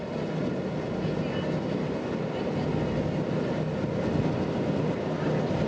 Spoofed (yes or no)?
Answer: no